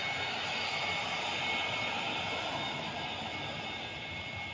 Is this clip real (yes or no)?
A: yes